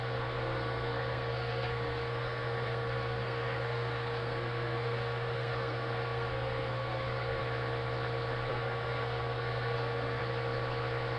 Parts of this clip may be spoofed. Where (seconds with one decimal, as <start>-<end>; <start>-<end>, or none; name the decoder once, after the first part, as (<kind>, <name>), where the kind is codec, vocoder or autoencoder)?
0.0-7.4 (codec, SNAC); 8.5-10.2